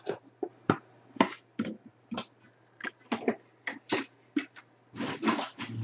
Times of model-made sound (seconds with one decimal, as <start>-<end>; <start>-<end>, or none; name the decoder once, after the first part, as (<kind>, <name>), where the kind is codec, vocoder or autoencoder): none